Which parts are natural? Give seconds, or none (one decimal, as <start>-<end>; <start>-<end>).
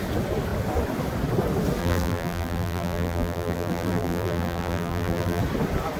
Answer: 0.0-1.8; 5.4-6.0